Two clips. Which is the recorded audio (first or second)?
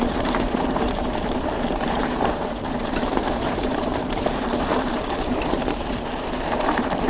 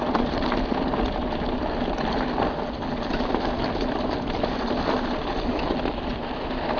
second